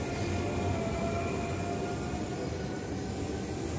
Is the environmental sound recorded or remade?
recorded